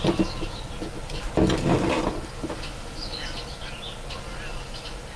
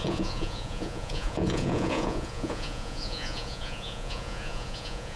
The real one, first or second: first